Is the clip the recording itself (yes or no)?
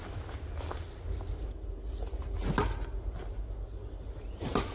yes